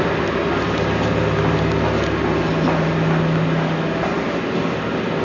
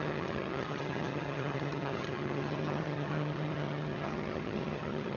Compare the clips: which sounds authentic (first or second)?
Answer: first